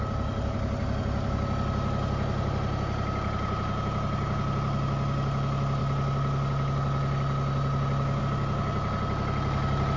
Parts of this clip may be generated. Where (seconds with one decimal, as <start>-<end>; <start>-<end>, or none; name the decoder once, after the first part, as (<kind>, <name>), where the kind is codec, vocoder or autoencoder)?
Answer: none